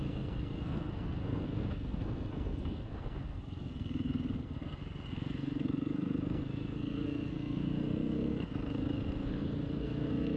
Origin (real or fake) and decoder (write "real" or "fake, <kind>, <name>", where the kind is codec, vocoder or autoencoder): fake, codec, SNAC